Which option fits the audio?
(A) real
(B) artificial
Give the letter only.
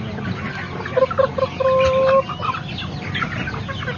A